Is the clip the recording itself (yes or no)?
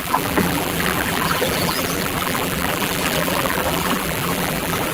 no